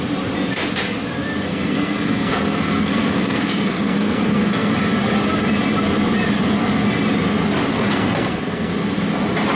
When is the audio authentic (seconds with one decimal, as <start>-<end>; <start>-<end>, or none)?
0.0-1.5; 4.7-7.7; 8.7-9.6